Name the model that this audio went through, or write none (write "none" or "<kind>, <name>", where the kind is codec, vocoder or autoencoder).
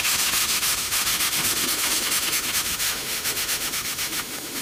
autoencoder, DAC-VAE